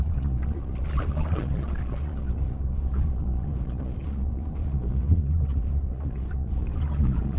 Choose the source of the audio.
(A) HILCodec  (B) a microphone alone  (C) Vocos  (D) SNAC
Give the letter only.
C